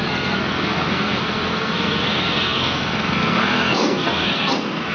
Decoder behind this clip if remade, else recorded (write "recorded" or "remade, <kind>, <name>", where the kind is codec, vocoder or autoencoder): remade, codec, SNAC